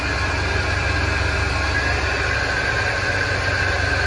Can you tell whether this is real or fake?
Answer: real